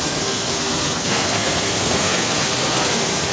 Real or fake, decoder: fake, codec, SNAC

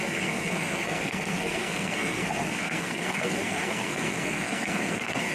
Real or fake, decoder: fake, codec, SNAC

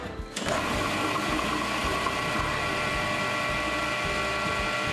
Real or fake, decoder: real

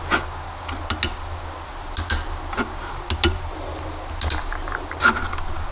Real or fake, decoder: real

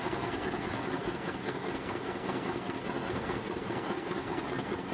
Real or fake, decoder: fake, codec, SNAC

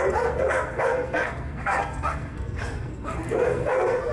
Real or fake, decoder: fake, codec, SNAC